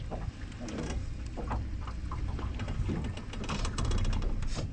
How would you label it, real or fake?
fake